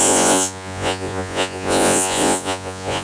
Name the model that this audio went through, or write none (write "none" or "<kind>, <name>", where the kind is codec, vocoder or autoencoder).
vocoder, Vocos